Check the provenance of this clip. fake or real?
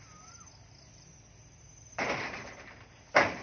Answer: real